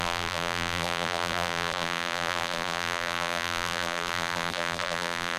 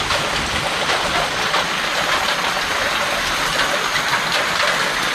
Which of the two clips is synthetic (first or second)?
first